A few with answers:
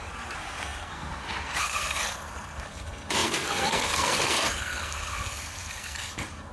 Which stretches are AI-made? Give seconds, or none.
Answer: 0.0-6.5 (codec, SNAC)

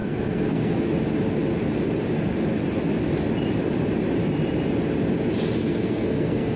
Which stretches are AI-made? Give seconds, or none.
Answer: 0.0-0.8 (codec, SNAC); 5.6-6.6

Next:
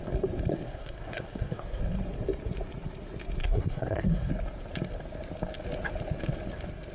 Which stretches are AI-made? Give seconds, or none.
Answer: 0.5-1.8 (codec, SNAC); 3.4-4.3

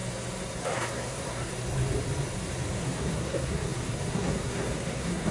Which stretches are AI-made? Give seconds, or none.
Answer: 0.6-1.5 (codec, SNAC); 2.8-5.3